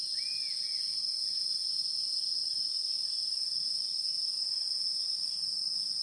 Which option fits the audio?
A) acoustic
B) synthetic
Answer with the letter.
A